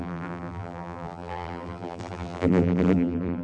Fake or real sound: fake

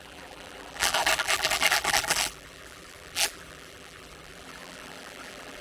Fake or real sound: fake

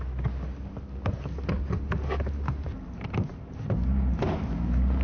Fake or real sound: real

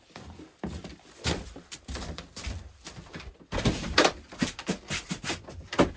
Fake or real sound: fake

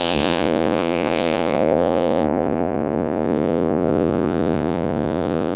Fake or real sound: fake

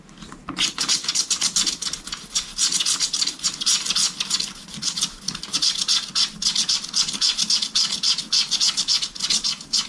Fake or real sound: real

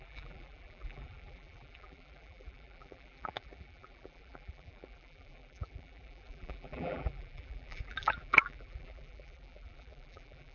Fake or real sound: fake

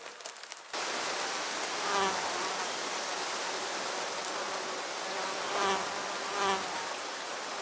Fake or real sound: real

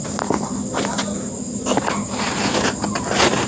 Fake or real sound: real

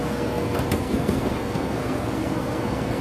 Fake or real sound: fake